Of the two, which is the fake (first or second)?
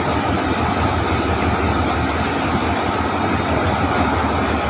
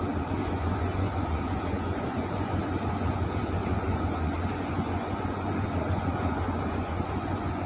second